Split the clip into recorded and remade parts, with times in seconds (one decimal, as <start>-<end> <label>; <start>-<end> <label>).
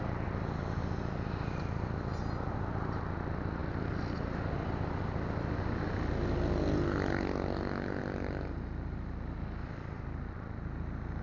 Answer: 0.0-11.2 recorded